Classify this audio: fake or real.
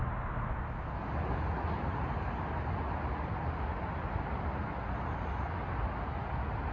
real